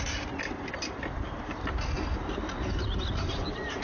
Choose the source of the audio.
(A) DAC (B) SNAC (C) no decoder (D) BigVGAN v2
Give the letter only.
C